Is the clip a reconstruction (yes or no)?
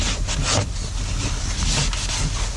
no